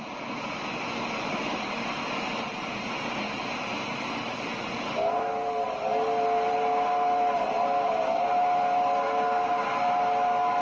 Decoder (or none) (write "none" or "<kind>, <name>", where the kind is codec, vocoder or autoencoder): none